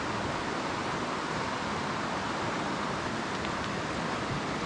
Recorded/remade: recorded